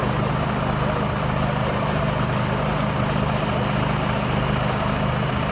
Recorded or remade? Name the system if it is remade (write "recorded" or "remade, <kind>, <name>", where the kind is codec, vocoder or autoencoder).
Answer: recorded